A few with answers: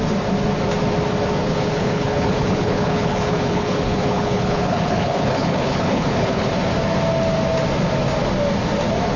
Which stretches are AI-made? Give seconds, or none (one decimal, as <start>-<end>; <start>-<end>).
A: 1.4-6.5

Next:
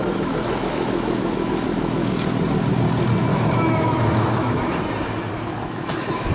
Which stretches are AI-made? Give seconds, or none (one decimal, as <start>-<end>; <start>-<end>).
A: 0.0-2.1; 3.3-4.8; 5.3-6.3

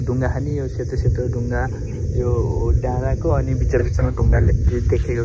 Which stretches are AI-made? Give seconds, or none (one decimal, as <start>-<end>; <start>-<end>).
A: 3.8-4.5

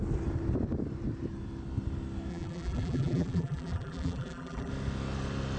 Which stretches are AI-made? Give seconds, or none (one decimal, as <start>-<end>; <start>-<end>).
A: 2.3-4.7

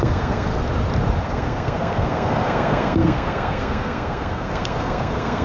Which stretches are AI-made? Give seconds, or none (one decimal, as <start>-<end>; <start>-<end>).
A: 0.0-0.5; 1.2-5.4

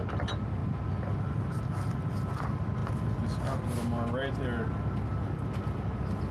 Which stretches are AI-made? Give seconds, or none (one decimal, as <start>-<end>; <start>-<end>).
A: none

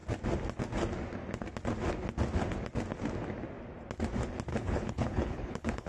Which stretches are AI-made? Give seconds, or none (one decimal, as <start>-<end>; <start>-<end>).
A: 4.5-5.9

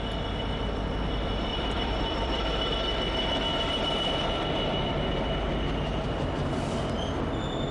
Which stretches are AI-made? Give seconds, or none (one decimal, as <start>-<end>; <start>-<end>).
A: 1.5-2.5; 3.5-4.5